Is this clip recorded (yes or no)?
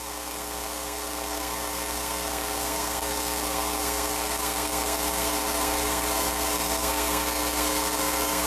no